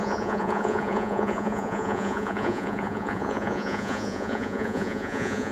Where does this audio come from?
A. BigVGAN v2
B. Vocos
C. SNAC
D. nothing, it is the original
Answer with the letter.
B